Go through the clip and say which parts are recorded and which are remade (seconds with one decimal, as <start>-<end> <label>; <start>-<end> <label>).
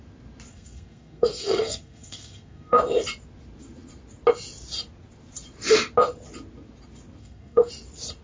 0.0-0.5 recorded; 0.5-2.8 remade; 2.8-7.2 recorded; 7.2-7.7 remade; 7.7-8.2 recorded